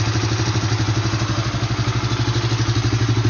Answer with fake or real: real